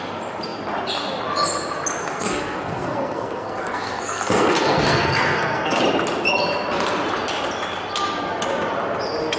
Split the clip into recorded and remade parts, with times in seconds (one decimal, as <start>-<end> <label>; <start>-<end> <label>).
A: 0.0-2.0 recorded; 2.0-5.8 remade; 5.8-9.4 recorded